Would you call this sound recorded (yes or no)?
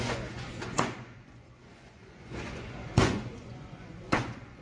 no